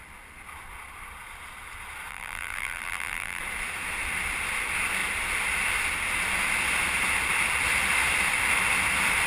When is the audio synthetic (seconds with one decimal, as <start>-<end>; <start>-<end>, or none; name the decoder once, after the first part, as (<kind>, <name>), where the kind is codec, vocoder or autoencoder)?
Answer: 2.1-3.4 (vocoder, BigVGAN v2)